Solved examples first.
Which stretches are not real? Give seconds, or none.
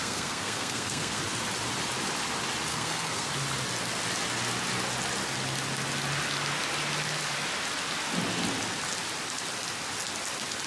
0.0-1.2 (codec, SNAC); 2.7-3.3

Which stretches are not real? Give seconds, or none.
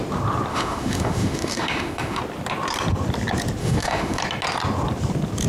0.5-2.2 (autoencoder, DAC-VAE); 3.6-4.2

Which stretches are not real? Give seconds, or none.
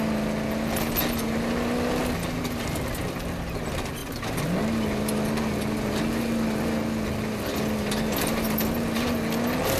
none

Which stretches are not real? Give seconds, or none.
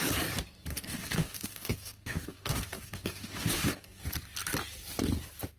0.7-4.0 (codec, DAC)